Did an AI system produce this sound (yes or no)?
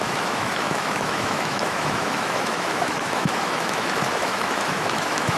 yes